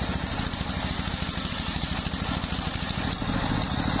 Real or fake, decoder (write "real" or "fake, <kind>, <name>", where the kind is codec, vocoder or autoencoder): real